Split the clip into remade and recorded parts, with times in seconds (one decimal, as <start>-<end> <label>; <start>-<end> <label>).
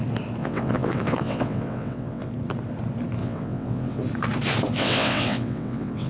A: 0.0-0.4 recorded; 0.4-2.3 remade; 2.3-3.2 recorded; 3.2-4.0 remade; 4.0-4.8 recorded; 4.8-6.1 remade